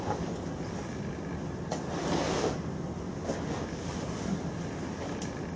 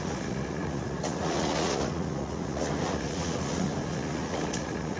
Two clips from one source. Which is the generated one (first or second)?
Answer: second